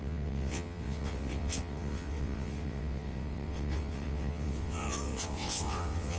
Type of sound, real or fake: fake